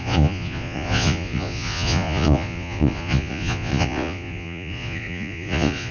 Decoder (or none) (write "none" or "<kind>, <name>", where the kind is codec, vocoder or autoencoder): vocoder, Vocos